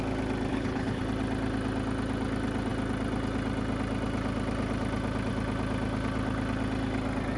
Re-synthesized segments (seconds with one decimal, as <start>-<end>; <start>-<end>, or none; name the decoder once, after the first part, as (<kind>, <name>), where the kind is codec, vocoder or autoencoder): 0.5-1.0 (codec, HILCodec)